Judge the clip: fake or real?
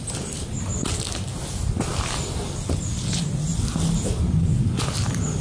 real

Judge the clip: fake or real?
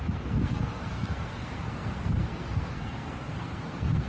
fake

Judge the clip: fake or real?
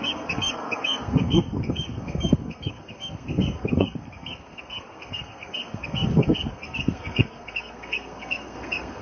fake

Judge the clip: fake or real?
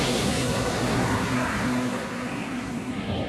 fake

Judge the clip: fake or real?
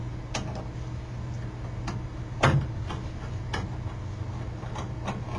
real